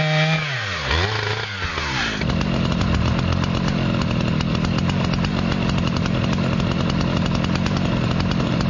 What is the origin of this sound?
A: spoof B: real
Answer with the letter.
B